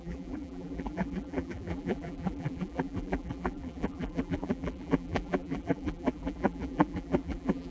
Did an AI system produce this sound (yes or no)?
yes